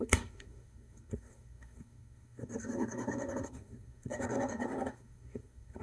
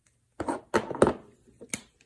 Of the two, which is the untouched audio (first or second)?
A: second